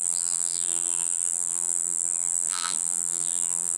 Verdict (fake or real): fake